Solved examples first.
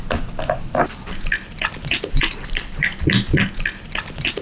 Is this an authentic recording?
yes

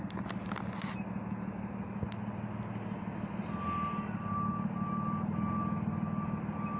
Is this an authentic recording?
yes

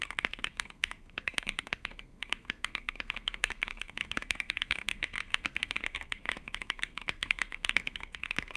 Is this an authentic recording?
no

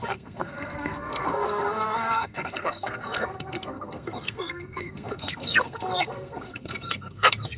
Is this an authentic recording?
no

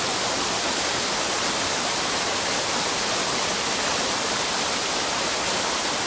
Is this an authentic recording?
yes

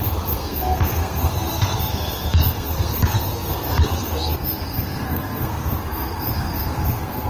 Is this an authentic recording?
no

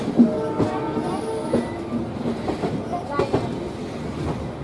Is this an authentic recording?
yes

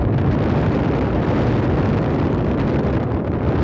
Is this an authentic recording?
yes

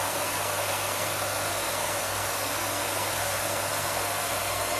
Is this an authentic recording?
no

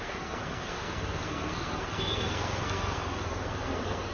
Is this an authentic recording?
no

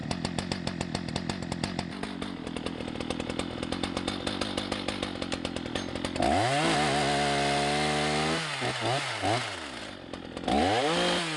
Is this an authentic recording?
yes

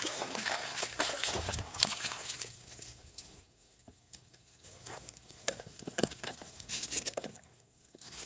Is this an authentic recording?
no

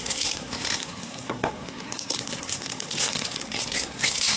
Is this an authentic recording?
no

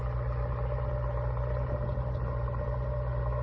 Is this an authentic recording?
yes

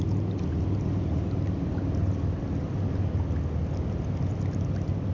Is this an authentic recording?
yes